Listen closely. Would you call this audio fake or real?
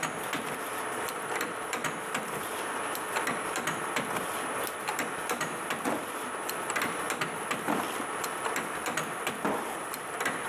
fake